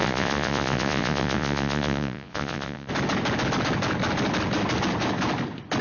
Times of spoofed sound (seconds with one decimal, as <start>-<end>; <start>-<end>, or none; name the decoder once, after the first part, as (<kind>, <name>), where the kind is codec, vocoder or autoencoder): 0.0-2.9 (vocoder, Vocos)

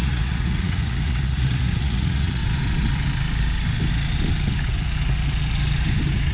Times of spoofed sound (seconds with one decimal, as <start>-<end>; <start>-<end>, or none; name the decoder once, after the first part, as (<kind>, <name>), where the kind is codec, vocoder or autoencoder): 0.0-2.4 (vocoder, Vocos)

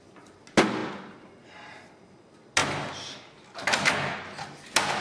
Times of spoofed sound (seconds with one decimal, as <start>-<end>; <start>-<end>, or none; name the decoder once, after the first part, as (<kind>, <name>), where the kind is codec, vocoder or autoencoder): none

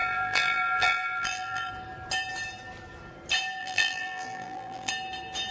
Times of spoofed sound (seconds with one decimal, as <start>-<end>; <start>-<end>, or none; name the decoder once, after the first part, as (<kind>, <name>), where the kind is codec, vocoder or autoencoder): 0.0-1.7 (vocoder, BigVGAN v2); 3.6-4.9

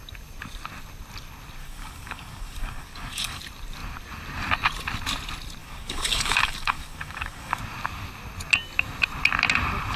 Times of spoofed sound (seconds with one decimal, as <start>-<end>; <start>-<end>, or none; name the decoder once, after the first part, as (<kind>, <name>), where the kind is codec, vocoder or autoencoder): 1.6-3.4 (codec, DAC); 5.6-7.6

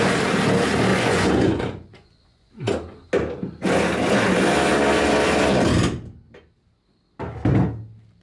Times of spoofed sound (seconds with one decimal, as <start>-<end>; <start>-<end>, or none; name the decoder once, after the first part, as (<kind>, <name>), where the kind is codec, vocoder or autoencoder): 0.9-2.5 (vocoder, Vocos)

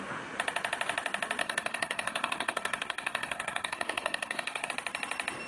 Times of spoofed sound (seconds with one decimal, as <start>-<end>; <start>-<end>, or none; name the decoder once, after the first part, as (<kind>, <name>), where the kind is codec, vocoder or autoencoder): 1.4-4.7 (codec, SNAC)